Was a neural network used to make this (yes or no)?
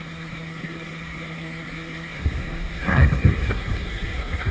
yes